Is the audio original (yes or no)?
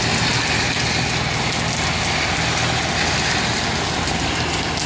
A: yes